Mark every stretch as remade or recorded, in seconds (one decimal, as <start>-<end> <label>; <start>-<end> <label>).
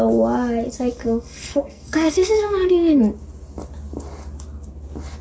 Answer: 0.0-1.0 recorded; 1.0-3.0 remade; 3.0-5.2 recorded